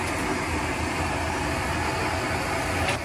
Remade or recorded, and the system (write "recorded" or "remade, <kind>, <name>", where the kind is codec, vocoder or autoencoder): recorded